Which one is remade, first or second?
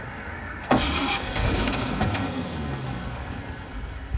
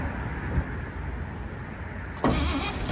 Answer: first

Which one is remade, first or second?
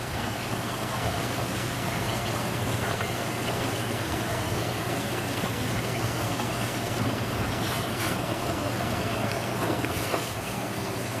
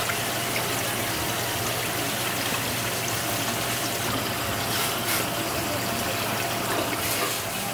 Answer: first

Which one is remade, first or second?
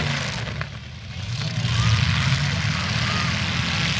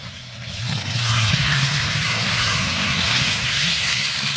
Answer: second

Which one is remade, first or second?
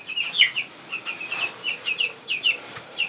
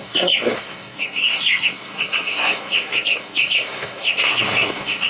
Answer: second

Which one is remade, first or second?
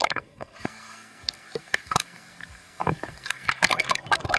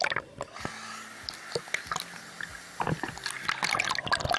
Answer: first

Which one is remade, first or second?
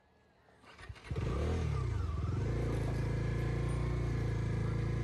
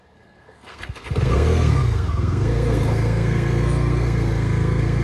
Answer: second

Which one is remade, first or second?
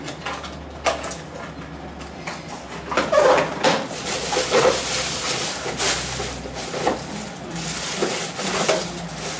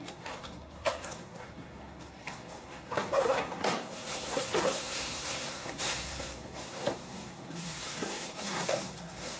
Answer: second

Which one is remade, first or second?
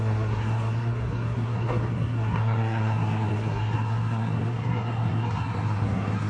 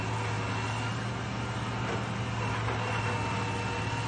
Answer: first